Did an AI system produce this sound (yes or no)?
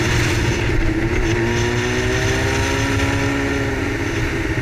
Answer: no